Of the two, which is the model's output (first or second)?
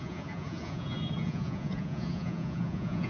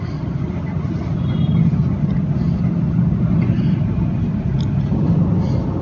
first